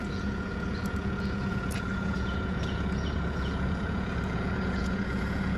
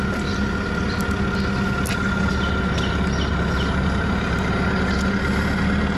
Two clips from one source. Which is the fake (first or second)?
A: first